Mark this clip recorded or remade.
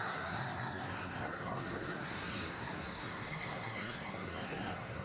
remade